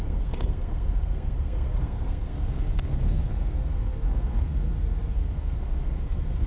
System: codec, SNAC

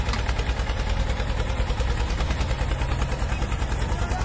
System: none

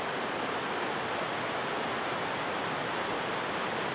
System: none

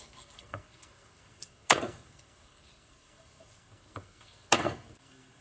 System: codec, SNAC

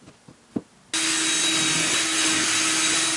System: none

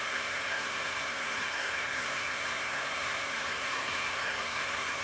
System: codec, SNAC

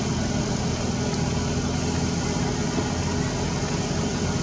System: none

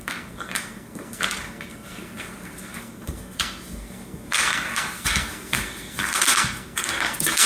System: codec, SNAC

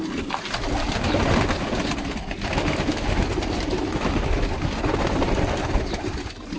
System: none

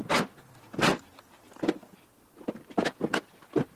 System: none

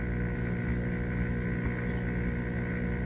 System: none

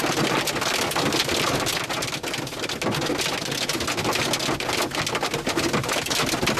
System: none